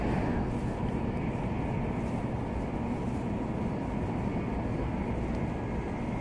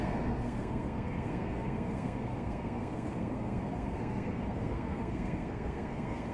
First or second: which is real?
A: first